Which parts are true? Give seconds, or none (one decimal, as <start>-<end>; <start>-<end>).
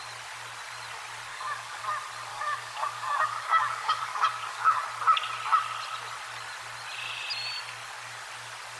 0.0-1.3; 1.8-2.3; 4.8-8.8